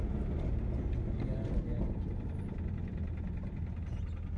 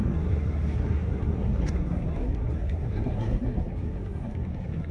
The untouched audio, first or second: first